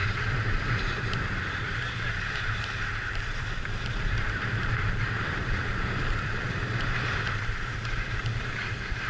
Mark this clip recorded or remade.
remade